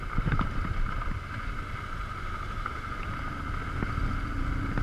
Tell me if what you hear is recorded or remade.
recorded